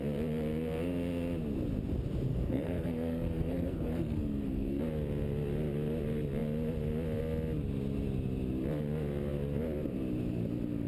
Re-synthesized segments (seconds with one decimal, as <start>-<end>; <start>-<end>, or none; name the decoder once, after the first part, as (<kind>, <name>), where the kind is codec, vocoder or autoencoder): 2.3-4.8 (codec, SNAC)